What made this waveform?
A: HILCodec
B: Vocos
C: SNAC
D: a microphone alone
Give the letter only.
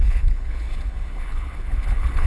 A